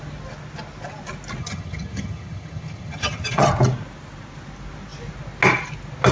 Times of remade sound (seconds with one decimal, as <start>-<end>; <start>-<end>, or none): 1.4-3.5